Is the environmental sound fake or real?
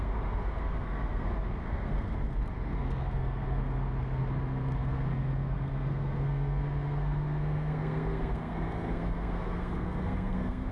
fake